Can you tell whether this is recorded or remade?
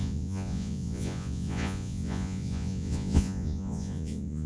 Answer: remade